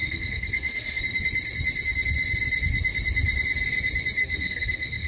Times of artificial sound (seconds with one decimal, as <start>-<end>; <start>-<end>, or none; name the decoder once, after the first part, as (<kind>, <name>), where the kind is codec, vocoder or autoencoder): 0.0-1.0 (codec, SNAC); 4.2-5.1